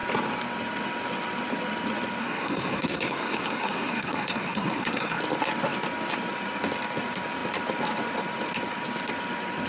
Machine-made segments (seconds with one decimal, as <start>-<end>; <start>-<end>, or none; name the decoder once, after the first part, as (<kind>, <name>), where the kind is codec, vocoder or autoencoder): 2.2-5.2 (codec, SNAC)